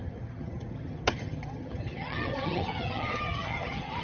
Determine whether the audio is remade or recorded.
remade